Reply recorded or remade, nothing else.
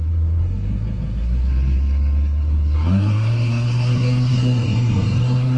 remade